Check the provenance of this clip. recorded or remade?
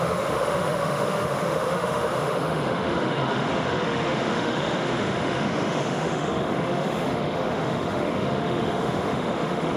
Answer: remade